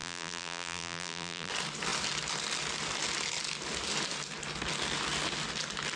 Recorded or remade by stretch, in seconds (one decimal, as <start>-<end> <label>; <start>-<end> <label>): 0.0-1.5 remade; 1.5-6.0 recorded